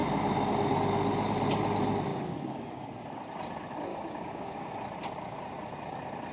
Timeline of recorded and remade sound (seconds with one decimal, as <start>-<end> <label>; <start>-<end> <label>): 0.0-2.1 recorded; 2.1-2.9 remade; 2.9-3.9 recorded; 3.9-4.7 remade; 4.7-6.3 recorded